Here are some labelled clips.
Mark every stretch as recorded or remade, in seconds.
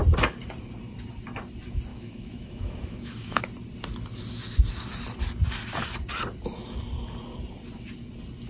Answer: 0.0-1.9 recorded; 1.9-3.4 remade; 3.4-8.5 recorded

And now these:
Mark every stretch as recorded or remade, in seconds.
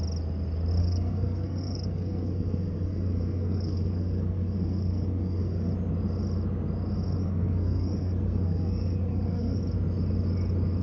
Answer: 0.0-0.8 recorded; 0.8-5.7 remade; 5.7-7.2 recorded; 7.2-9.6 remade; 9.6-10.8 recorded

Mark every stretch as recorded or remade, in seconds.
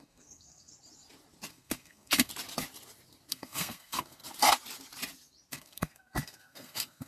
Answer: 0.0-0.7 remade; 0.7-1.5 recorded; 1.5-2.3 remade; 2.3-3.3 recorded; 3.3-4.2 remade; 4.2-5.5 recorded; 5.5-7.1 remade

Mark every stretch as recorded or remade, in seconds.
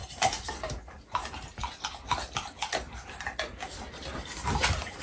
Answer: 0.0-1.6 remade; 1.6-4.6 recorded; 4.6-5.0 remade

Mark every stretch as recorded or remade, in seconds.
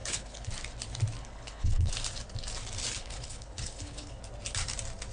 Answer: 0.0-0.5 remade; 0.5-1.2 recorded; 1.2-1.9 remade; 1.9-3.0 recorded; 3.0-4.2 remade; 4.2-5.1 recorded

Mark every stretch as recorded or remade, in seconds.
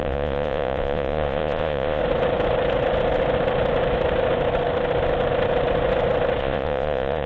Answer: 0.0-2.0 remade; 2.0-6.4 recorded; 6.4-7.3 remade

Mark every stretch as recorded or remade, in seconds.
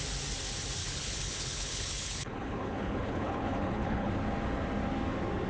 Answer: 0.0-0.8 recorded; 0.8-4.1 remade; 4.1-5.5 recorded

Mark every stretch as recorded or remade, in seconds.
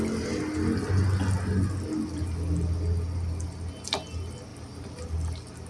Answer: 0.0-5.7 recorded